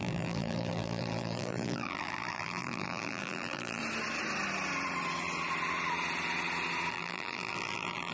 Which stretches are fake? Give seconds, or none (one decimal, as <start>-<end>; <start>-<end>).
0.0-3.8; 6.9-8.1